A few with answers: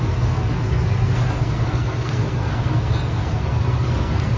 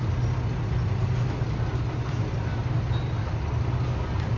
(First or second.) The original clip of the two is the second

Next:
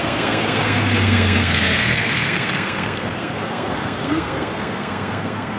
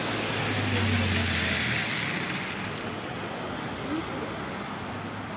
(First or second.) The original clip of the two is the second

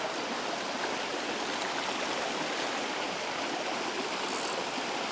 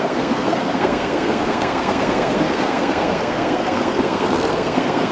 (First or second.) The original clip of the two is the first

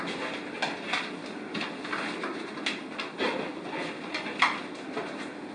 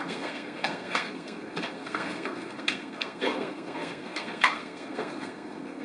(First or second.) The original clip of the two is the first